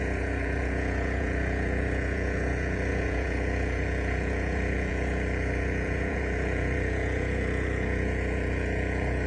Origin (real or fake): fake